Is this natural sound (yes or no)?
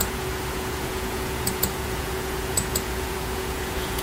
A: no